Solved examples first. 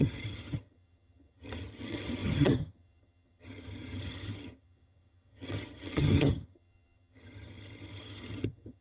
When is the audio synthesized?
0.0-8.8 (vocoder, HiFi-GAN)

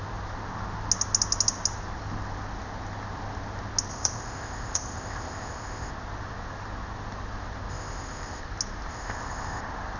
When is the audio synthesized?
3.9-5.9 (codec, ZipCodec); 7.7-8.4; 8.9-9.6

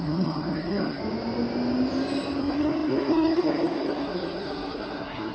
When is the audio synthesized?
0.0-1.0 (codec, SNAC); 2.4-5.3

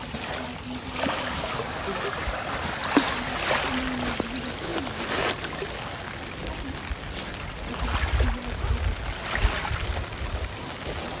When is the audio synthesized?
none

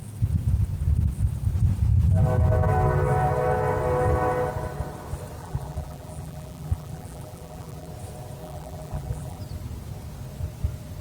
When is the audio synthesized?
5.4-7.9 (vocoder, BigVGAN v2); 8.4-9.4

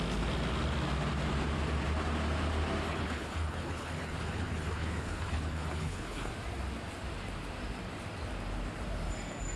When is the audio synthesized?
2.9-6.3 (codec, HILCodec)

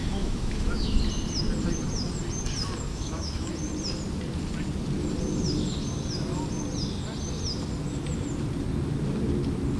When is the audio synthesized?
0.0-1.0 (autoencoder, DAC-VAE); 2.9-3.5